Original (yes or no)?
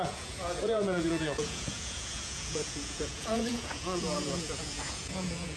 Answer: no